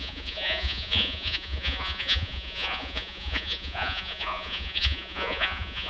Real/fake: fake